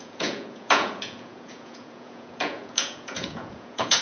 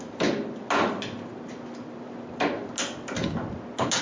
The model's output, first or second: first